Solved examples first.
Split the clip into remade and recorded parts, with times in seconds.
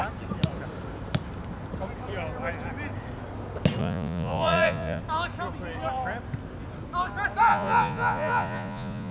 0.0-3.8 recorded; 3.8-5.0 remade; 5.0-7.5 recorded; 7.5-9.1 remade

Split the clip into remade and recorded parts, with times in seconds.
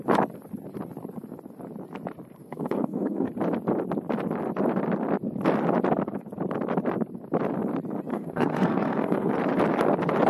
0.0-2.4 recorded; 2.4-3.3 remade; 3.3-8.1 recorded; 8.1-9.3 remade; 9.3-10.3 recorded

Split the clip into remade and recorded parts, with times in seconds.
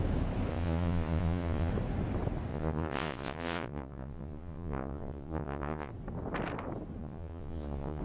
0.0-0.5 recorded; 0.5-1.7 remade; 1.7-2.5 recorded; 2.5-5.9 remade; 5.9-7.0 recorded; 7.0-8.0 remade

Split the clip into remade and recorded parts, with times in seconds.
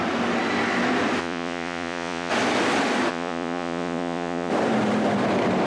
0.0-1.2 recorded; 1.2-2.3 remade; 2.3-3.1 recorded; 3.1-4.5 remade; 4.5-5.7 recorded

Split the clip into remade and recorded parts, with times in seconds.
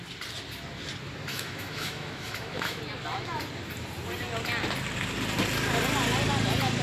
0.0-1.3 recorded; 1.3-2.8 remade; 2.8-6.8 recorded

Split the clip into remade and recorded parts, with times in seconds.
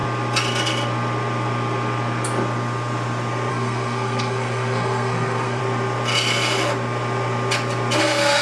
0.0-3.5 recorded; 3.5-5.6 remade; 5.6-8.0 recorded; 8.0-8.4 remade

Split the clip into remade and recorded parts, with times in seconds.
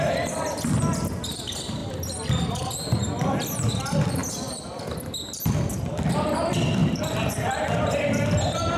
0.0-6.8 recorded; 6.8-7.3 remade; 7.3-8.8 recorded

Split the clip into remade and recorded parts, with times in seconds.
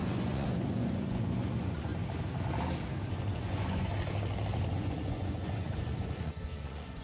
0.0-1.9 remade; 1.9-3.1 recorded; 3.1-3.9 remade; 3.9-4.7 recorded; 4.7-7.0 remade